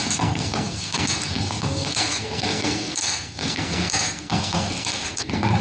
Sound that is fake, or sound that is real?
fake